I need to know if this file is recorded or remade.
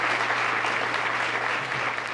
recorded